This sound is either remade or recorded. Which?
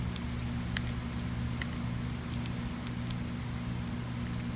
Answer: recorded